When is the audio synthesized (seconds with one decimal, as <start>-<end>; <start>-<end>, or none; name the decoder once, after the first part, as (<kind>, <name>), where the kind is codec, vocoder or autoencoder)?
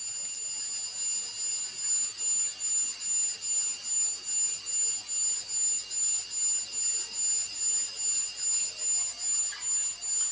none